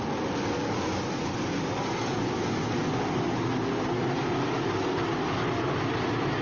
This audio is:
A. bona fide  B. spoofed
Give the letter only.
A